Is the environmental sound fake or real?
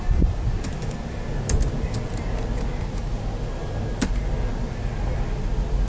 real